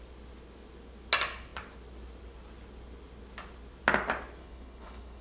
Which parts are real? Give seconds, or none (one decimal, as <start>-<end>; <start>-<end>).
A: 0.0-4.4